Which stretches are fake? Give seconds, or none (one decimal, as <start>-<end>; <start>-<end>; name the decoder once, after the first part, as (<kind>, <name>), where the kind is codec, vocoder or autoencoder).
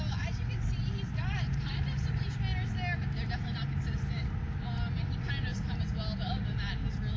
none